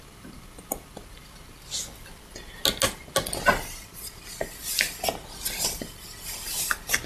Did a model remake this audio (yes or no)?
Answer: no